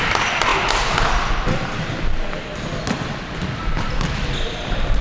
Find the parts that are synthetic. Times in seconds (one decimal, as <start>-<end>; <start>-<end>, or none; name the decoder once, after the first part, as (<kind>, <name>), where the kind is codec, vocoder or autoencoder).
none